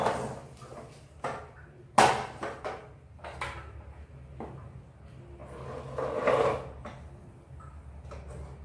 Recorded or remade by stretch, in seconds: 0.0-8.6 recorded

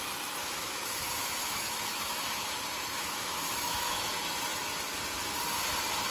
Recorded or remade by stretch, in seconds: 0.0-0.4 recorded; 0.4-4.1 remade; 4.1-6.1 recorded

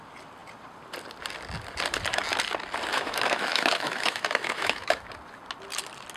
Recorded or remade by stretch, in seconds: 0.0-2.9 recorded; 2.9-5.1 remade; 5.1-6.2 recorded

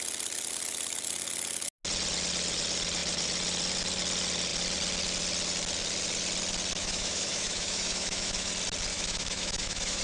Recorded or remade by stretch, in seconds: 0.0-6.8 recorded; 6.8-8.5 remade; 8.5-8.9 recorded; 8.9-10.0 remade

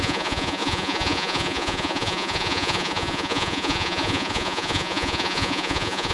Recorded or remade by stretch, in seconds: 0.0-6.1 remade

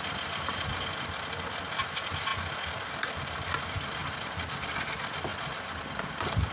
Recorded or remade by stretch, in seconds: 0.0-6.5 recorded

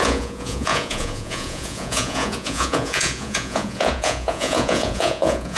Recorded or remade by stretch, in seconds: 0.0-5.6 remade

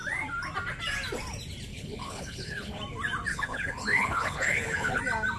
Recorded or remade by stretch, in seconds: 0.0-1.7 recorded; 1.7-2.8 remade; 2.8-3.3 recorded; 3.3-5.0 remade; 5.0-5.4 recorded